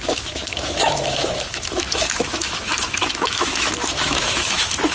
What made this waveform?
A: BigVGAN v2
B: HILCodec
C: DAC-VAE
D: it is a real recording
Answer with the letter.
C